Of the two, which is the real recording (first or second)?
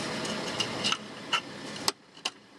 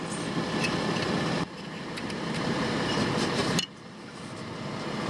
first